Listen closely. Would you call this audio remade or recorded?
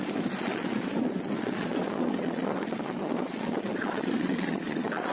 remade